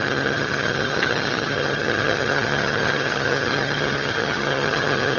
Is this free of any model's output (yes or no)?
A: no